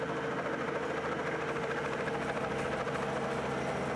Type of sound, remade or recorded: recorded